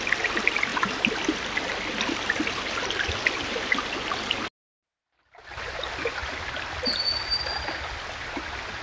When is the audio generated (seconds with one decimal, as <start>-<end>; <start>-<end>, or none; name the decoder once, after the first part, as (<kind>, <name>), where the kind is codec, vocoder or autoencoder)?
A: 0.7-4.4 (vocoder, BigVGAN v2); 6.2-7.1